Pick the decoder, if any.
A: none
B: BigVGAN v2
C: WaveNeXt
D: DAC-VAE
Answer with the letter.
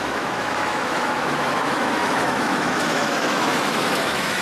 D